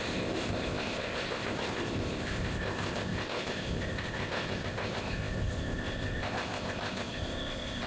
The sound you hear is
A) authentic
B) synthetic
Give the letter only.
B